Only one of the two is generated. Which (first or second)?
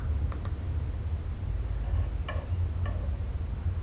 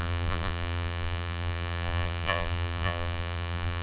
second